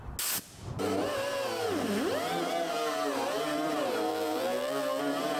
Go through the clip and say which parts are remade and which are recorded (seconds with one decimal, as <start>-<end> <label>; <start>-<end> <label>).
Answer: 0.0-4.1 recorded; 4.1-5.0 remade; 5.0-5.4 recorded

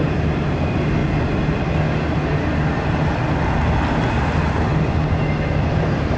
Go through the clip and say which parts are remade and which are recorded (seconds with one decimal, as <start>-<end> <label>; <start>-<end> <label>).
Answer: 0.0-1.0 remade; 1.0-4.1 recorded; 4.1-4.7 remade; 4.7-5.5 recorded; 5.5-6.2 remade

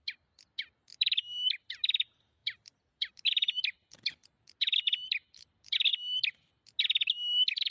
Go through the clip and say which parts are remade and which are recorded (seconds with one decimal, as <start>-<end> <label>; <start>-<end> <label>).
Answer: 0.0-0.9 recorded; 0.9-1.5 remade; 1.5-2.4 recorded; 2.4-3.1 remade; 3.1-5.9 recorded; 5.9-6.5 remade; 6.5-7.7 recorded

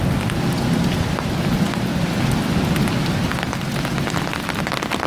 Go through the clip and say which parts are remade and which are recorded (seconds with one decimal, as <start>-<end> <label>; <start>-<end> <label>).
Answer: 0.0-1.9 recorded; 1.9-2.5 remade; 2.5-3.3 recorded; 3.3-5.1 remade

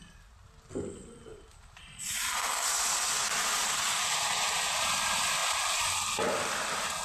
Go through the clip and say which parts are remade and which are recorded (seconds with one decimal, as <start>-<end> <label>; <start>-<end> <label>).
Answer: 0.0-1.3 recorded; 1.3-2.4 remade; 2.4-3.6 recorded; 3.6-4.9 remade; 4.9-7.0 recorded